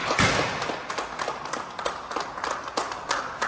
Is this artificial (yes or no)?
no